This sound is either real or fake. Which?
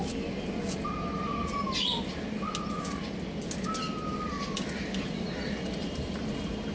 real